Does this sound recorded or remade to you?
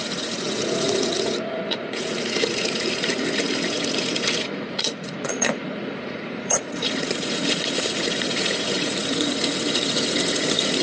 remade